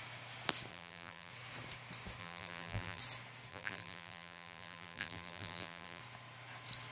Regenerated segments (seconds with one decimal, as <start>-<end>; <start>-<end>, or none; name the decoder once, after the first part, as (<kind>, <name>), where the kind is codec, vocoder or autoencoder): 0.7-1.3 (vocoder, BigVGAN v2); 2.2-3.0; 3.5-6.0